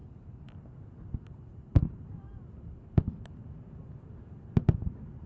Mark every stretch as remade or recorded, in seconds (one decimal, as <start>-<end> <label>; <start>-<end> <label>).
0.0-5.3 recorded